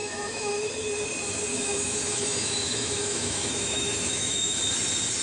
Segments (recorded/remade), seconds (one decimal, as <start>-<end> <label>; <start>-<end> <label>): 0.0-0.7 remade; 0.7-1.5 recorded; 1.5-4.6 remade; 4.6-5.2 recorded